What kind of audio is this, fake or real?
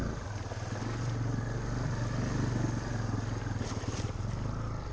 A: real